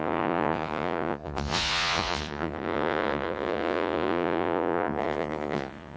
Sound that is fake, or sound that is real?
fake